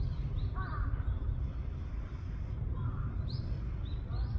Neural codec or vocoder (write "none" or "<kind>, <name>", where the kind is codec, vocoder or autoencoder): none